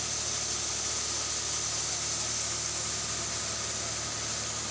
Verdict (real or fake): real